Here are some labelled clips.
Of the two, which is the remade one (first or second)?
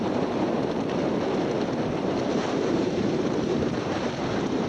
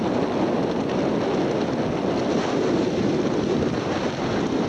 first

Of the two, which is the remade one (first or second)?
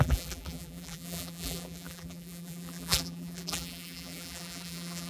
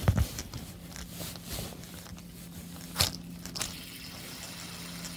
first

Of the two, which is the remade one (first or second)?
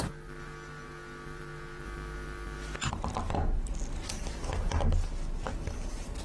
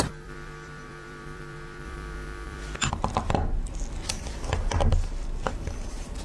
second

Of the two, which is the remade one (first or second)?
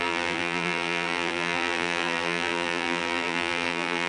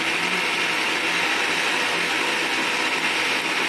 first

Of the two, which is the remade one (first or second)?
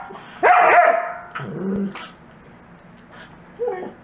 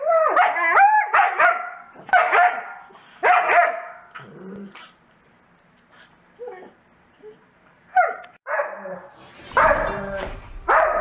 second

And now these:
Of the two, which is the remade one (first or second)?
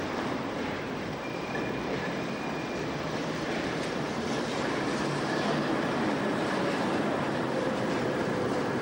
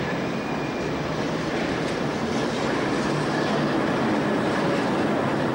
first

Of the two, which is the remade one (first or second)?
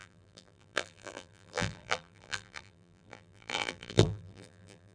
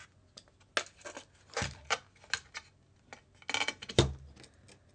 first